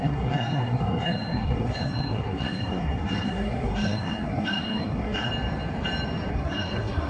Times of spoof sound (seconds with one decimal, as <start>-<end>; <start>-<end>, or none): 0.0-5.3; 6.3-7.1

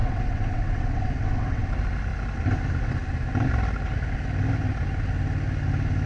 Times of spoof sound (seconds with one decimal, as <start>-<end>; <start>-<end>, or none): 0.0-1.7

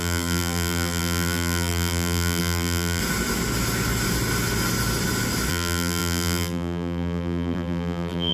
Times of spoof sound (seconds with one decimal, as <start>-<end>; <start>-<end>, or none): 0.0-3.0; 5.5-8.3

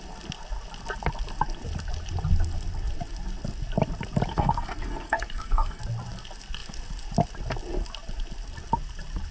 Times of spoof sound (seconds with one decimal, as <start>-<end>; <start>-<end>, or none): 4.3-5.8

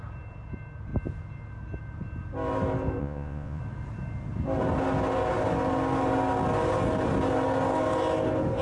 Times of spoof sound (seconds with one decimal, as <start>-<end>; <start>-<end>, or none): 3.0-3.6

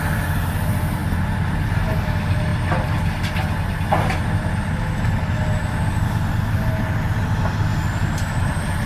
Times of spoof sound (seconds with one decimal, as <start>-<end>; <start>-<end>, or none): none

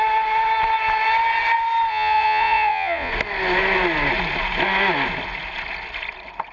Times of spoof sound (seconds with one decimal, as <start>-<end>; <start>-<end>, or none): 1.9-3.1